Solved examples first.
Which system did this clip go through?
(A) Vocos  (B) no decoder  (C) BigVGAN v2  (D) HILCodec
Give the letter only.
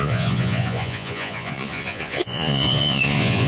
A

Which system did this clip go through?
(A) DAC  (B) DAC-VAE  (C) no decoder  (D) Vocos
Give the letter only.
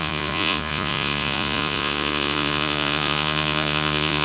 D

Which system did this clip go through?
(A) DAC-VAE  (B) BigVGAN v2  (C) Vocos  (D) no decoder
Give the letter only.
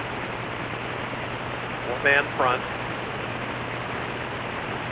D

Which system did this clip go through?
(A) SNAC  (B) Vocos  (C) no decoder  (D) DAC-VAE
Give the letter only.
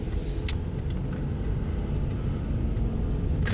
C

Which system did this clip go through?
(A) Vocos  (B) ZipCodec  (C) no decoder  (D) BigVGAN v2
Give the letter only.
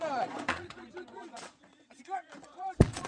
A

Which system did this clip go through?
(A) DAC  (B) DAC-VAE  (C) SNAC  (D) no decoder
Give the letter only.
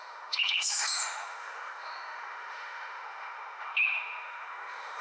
B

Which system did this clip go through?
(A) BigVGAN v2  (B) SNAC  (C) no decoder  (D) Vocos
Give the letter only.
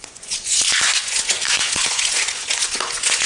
D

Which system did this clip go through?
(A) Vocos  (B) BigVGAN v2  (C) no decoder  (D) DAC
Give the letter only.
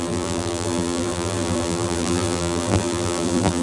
B